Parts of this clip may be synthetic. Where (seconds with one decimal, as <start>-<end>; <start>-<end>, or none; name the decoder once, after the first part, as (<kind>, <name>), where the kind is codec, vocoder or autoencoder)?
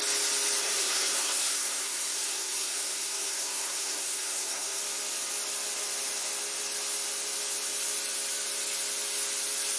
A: 0.6-4.8 (codec, SNAC)